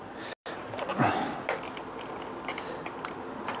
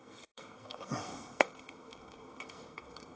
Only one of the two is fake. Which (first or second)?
second